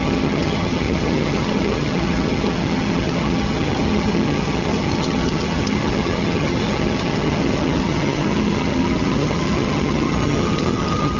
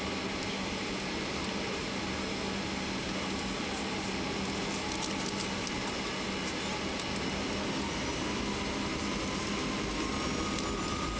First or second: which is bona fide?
second